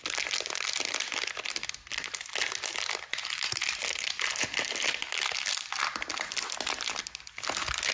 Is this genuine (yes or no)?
yes